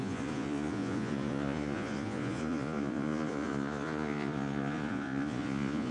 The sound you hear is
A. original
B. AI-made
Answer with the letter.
B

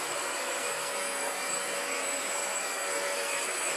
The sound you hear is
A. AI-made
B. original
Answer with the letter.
A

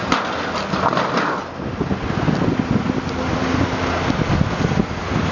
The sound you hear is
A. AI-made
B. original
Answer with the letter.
B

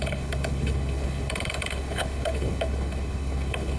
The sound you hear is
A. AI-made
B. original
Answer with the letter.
A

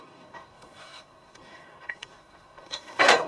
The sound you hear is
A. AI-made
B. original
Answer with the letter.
A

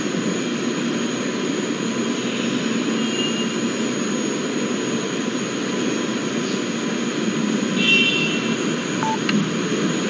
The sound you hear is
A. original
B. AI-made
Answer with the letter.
A